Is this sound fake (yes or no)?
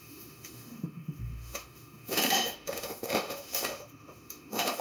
yes